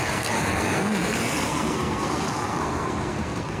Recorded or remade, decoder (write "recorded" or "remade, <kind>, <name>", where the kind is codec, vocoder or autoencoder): remade, codec, SNAC